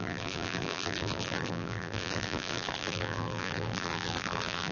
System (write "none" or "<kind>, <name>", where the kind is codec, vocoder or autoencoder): vocoder, BigVGAN v2